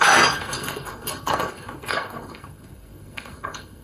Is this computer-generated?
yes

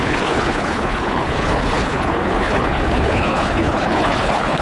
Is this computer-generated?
yes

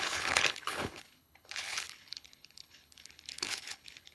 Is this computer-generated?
yes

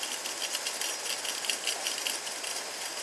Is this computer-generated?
no